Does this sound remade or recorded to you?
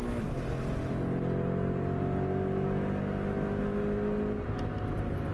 recorded